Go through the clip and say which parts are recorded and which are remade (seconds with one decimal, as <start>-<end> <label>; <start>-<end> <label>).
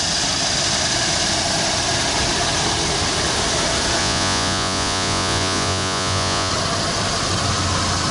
0.0-4.0 recorded; 4.0-6.5 remade; 6.5-8.1 recorded